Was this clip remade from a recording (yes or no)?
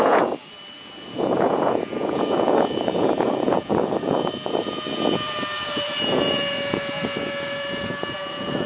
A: yes